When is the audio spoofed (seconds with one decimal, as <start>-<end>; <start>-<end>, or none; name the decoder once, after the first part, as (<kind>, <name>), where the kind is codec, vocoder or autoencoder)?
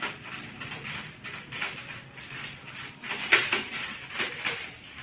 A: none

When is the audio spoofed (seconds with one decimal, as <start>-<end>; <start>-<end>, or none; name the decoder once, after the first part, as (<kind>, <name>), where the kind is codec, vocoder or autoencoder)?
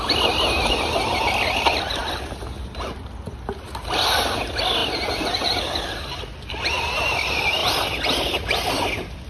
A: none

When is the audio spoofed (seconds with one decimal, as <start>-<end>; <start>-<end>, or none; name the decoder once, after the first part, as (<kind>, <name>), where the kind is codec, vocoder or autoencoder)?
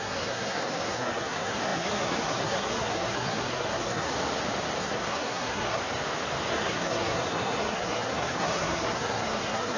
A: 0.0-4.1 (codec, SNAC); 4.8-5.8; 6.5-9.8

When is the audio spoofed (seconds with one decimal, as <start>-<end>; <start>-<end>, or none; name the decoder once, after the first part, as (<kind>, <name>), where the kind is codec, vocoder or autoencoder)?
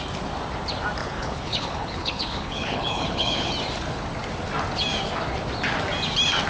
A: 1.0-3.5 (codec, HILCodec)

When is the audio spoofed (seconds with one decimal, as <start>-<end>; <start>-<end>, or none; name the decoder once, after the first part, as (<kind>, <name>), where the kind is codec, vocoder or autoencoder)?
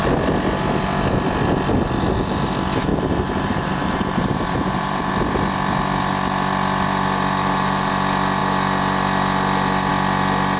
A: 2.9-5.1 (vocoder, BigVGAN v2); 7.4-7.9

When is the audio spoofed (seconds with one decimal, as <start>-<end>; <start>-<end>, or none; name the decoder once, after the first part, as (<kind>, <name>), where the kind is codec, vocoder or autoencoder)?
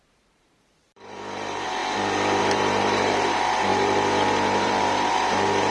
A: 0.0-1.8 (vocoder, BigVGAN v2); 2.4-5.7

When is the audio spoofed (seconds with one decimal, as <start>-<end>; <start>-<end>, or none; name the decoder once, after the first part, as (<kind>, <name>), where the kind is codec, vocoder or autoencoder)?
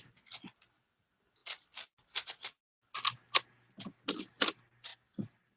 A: 1.4-2.3 (vocoder, BigVGAN v2); 4.9-5.6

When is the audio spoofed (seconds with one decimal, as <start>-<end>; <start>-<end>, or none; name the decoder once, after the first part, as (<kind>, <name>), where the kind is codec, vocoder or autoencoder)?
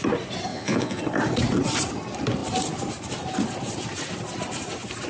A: 0.5-1.0 (vocoder, Vocos)